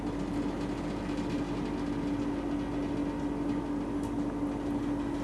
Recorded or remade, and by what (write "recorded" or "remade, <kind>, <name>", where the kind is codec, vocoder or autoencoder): recorded